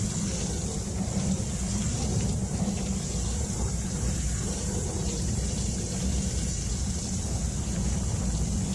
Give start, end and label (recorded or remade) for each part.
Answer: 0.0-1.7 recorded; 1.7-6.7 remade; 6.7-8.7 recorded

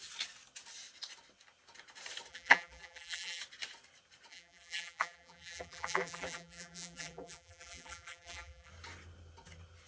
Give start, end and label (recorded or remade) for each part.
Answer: 0.0-2.3 recorded; 2.3-3.4 remade; 3.4-4.3 recorded; 4.3-8.7 remade; 8.7-9.9 recorded

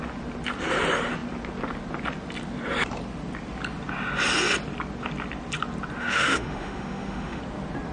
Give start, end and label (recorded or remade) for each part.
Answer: 0.0-6.0 recorded; 6.0-7.4 remade; 7.4-7.9 recorded

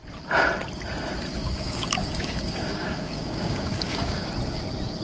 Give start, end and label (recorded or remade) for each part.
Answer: 0.0-1.4 recorded; 1.4-4.3 remade; 4.3-5.0 recorded

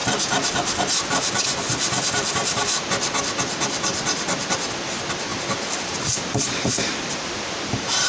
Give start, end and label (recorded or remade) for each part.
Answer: 0.0-0.9 remade; 0.9-1.7 recorded; 1.7-2.5 remade; 2.5-5.3 recorded; 5.3-8.1 remade

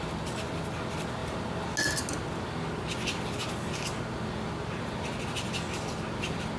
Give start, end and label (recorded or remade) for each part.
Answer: 0.0-6.6 recorded